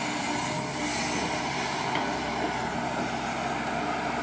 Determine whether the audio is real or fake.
real